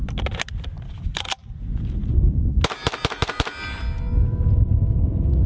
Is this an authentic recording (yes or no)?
yes